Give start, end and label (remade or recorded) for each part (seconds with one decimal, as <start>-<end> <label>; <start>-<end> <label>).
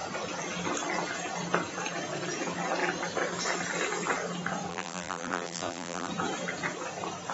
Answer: 0.0-4.7 recorded; 4.7-6.1 remade; 6.1-7.3 recorded